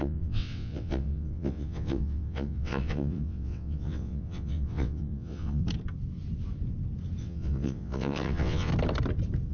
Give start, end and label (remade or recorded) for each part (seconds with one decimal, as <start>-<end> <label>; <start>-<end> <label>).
0.0-5.6 remade; 5.6-7.2 recorded; 7.2-8.7 remade; 8.7-9.5 recorded